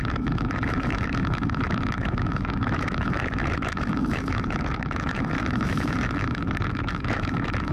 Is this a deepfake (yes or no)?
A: yes